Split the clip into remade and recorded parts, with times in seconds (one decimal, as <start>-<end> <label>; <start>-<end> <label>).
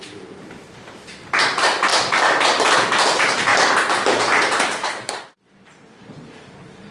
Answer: 0.0-6.9 remade